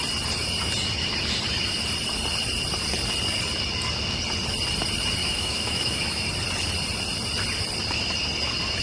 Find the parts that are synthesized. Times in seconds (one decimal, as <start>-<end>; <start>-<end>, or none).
5.2-6.2